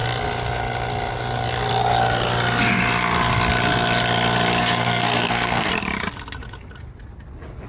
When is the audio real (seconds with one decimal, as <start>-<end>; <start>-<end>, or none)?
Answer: 0.0-4.6; 5.7-7.7